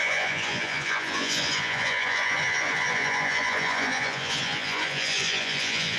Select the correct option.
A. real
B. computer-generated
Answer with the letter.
B